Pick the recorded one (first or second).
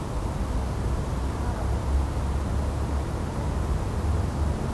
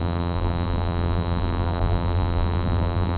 first